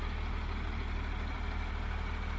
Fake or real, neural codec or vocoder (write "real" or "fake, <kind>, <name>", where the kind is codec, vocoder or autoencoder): real